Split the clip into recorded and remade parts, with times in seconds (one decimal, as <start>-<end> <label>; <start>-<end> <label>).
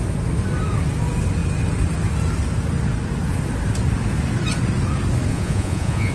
0.0-5.3 recorded; 5.3-6.1 remade